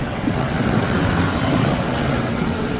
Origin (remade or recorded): remade